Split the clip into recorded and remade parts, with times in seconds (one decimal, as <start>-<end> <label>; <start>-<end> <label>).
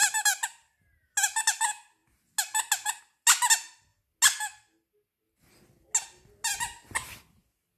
0.0-0.8 remade; 0.8-7.8 recorded